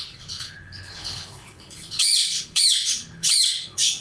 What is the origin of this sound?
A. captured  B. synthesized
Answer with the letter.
B